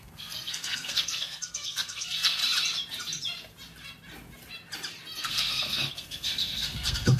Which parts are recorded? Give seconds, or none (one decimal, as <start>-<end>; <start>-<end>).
2.4-5.2